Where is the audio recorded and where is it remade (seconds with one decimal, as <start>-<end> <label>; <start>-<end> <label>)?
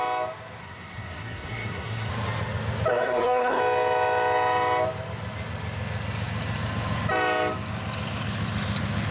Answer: 0.0-0.6 recorded; 0.6-2.1 remade; 2.1-2.9 recorded; 2.9-3.6 remade; 3.6-9.1 recorded